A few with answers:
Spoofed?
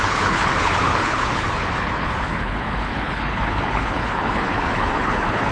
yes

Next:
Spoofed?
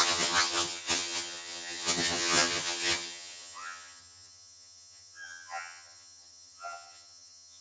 yes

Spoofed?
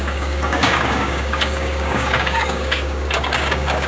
yes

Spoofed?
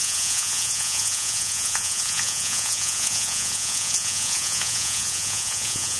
yes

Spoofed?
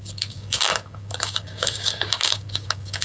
yes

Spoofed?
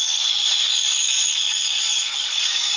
yes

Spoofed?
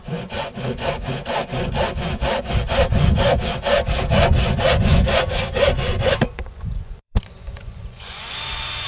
yes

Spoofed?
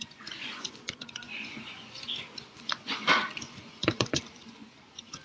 yes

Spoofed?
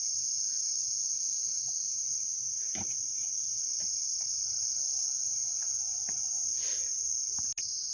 no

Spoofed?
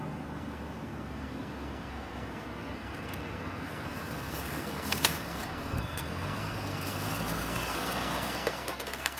yes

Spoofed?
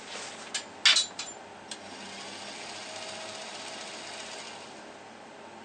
no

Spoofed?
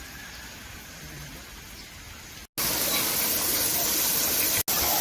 no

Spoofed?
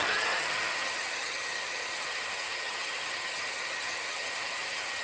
yes